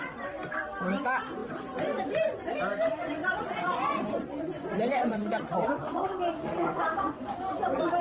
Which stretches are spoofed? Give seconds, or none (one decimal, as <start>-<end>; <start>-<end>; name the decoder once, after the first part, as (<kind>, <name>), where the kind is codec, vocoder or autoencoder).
3.2-7.3 (vocoder, Vocos)